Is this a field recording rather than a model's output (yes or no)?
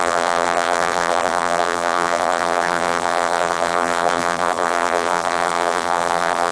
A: no